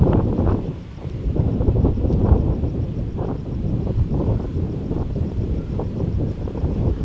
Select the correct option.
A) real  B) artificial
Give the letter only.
B